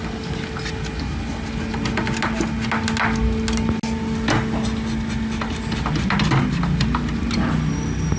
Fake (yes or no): no